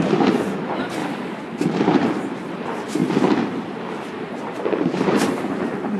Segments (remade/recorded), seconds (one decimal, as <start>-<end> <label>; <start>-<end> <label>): 0.0-1.0 remade; 1.0-2.6 recorded; 2.6-3.0 remade; 3.0-3.5 recorded; 3.5-6.0 remade